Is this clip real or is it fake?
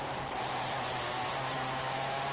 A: fake